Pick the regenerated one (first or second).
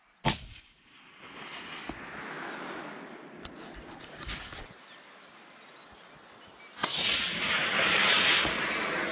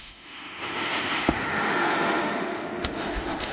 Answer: second